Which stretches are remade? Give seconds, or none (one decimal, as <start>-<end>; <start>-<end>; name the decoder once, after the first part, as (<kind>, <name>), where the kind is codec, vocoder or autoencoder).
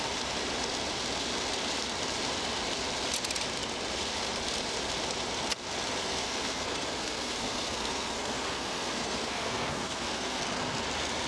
6.0-10.4 (codec, SNAC)